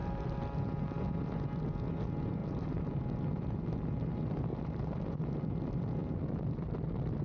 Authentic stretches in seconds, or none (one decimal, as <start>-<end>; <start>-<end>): 0.0-2.4; 3.0-4.5; 5.2-7.2